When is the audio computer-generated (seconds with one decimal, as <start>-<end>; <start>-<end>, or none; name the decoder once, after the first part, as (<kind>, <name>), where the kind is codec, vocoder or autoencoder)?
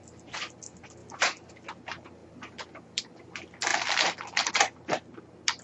1.0-1.5 (vocoder, BigVGAN v2); 2.2-3.0